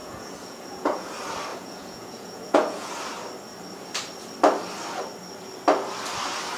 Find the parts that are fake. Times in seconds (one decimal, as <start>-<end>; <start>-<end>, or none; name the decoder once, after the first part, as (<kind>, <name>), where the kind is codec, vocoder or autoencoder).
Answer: 0.0-1.1 (vocoder, Vocos); 1.5-2.9

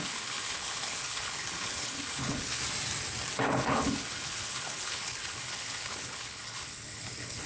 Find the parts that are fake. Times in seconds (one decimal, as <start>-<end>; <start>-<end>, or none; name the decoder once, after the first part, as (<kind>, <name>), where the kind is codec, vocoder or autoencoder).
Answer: 0.0-2.6 (codec, HILCodec); 3.4-7.5

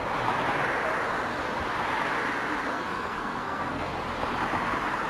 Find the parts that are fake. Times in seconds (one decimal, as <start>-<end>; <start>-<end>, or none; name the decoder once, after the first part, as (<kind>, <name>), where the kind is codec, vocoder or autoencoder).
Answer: 2.7-3.9 (codec, SNAC)

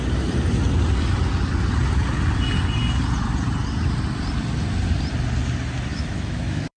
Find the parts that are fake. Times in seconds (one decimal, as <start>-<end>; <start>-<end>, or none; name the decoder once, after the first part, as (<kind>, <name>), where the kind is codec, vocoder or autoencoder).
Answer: 5.9-6.8 (autoencoder, DAC-VAE)

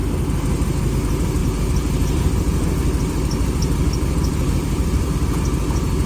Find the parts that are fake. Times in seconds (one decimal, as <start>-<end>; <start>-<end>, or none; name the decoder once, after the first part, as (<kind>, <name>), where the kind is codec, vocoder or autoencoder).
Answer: 1.4-5.1 (vocoder, BigVGAN v2)